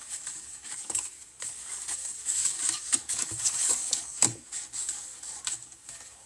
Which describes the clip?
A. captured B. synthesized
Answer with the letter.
B